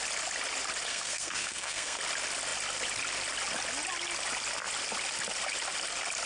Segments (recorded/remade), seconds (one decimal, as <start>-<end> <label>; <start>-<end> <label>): 0.0-0.9 recorded; 0.9-2.0 remade; 2.0-6.3 recorded